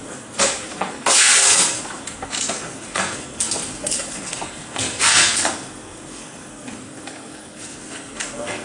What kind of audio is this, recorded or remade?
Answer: remade